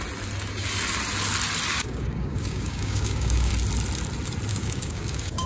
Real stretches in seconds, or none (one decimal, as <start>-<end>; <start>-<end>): 0.0-1.7; 3.5-4.5